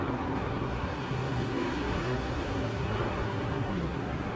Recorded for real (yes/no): no